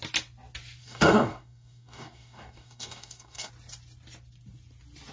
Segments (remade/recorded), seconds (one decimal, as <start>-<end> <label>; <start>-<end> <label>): 0.0-0.8 recorded; 0.8-3.5 remade; 3.5-5.1 recorded